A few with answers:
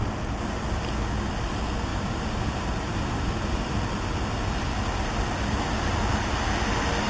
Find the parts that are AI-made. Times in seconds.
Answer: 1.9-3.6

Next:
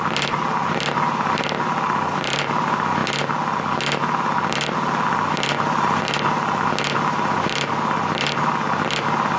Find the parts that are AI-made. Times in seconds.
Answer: none